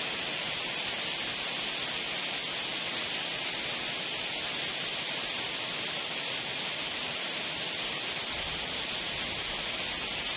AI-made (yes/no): no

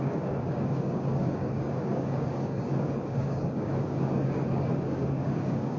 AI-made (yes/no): yes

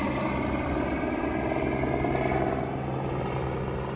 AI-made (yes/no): no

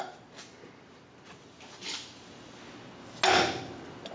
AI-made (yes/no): no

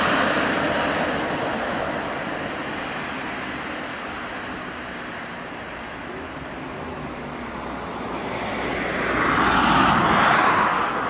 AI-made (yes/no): no